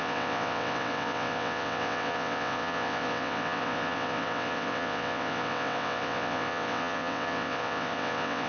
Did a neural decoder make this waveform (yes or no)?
yes